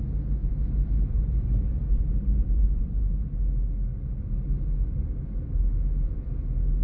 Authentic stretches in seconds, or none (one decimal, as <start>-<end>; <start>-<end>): 0.0-0.4; 3.4-6.8